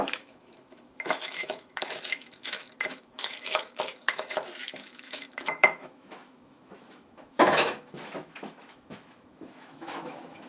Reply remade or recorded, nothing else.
remade